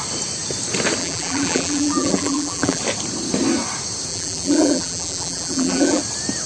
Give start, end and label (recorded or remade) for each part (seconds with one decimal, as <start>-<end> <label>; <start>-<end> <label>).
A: 0.0-1.0 recorded; 1.0-2.8 remade; 2.8-4.1 recorded; 4.1-6.0 remade; 6.0-6.5 recorded